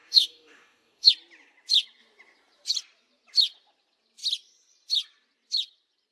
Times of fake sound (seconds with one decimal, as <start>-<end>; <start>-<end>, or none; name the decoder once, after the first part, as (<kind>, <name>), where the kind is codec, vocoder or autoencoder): 0.0-1.1 (codec, DAC)